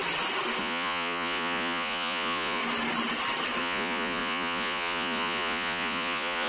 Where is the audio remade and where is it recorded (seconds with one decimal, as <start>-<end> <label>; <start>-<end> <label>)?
0.0-0.6 recorded; 0.6-2.6 remade; 2.6-3.6 recorded; 3.6-6.5 remade

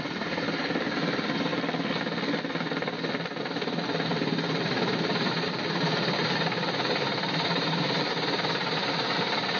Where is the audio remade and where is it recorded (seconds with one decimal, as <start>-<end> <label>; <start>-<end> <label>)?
0.0-1.5 remade; 1.5-3.4 recorded; 3.4-9.6 remade

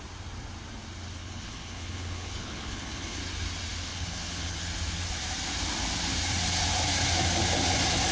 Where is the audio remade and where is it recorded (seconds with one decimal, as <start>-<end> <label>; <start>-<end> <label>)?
0.0-1.2 recorded; 1.2-3.2 remade; 3.2-3.9 recorded; 3.9-4.6 remade; 4.6-8.1 recorded

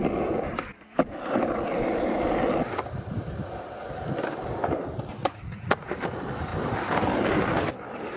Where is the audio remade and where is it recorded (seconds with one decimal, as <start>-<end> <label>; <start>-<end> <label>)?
0.0-5.2 recorded; 5.2-5.9 remade; 5.9-8.2 recorded